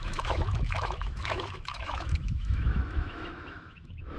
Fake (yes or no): yes